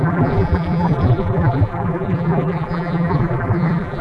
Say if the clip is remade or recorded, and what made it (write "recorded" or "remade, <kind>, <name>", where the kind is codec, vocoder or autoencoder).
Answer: remade, vocoder, BigVGAN v2